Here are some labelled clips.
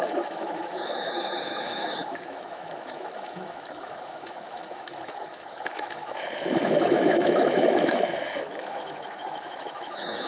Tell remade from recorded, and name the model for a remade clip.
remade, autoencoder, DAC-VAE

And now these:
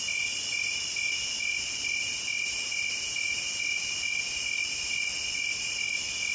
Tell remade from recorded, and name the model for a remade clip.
recorded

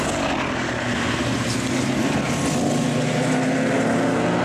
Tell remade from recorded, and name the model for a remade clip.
recorded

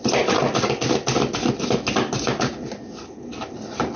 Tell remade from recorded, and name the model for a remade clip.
recorded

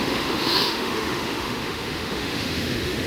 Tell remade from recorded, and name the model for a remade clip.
remade, autoencoder, DAC-VAE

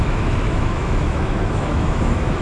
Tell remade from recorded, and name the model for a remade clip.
remade, autoencoder, DAC-VAE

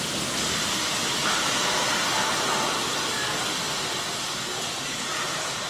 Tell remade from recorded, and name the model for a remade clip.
recorded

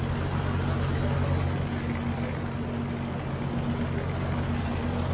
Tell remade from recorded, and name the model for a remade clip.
recorded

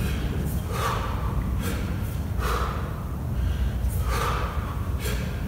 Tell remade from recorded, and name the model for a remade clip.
recorded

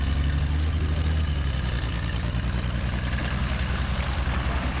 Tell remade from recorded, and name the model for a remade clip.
recorded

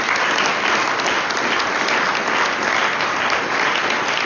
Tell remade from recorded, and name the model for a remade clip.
recorded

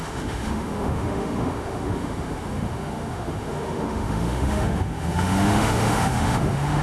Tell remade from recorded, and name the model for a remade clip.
remade, autoencoder, DAC-VAE